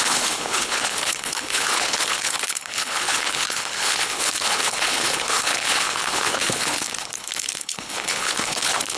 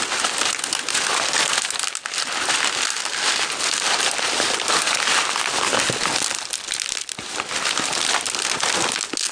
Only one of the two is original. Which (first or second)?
second